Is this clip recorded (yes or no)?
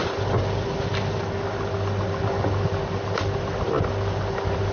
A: yes